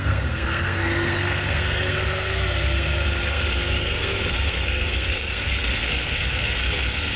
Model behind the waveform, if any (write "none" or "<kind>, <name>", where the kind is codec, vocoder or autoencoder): codec, SNAC